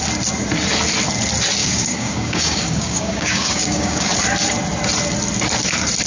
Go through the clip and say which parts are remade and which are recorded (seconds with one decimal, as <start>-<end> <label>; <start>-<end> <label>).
0.0-1.6 recorded; 1.6-4.1 remade; 4.1-6.1 recorded